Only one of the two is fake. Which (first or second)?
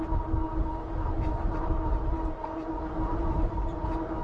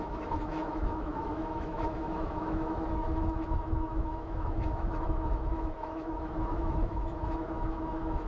second